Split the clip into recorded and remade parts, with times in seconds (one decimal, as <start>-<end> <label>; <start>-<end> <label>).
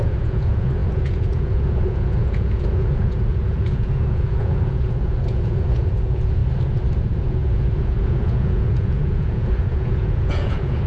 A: 0.0-6.4 remade; 6.4-7.0 recorded; 7.0-10.9 remade